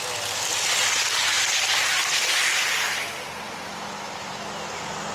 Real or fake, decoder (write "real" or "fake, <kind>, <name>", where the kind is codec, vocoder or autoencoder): real